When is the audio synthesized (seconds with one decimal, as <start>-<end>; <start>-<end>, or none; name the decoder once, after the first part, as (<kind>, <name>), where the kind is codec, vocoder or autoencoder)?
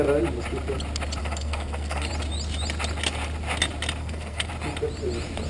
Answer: 1.2-2.1 (codec, SNAC); 4.0-4.5